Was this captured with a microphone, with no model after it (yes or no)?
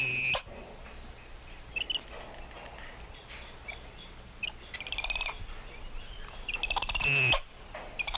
yes